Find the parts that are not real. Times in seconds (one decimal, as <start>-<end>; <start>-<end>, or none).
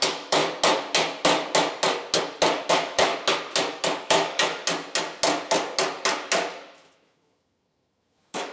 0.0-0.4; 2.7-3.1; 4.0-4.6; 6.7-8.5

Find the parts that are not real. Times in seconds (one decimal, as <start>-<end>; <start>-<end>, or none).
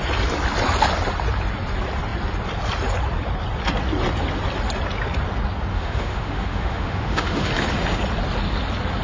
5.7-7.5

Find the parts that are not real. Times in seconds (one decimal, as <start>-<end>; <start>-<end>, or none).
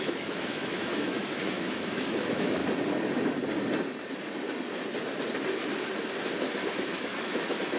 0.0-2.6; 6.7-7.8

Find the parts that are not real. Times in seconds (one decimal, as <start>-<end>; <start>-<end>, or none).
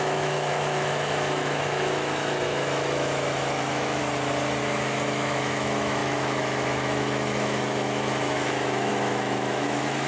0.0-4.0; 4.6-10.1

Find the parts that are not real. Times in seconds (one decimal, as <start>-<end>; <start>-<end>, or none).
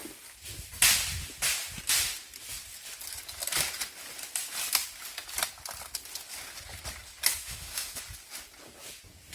7.4-8.0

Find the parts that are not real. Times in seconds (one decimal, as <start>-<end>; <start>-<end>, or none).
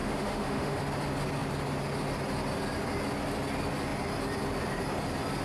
0.0-0.8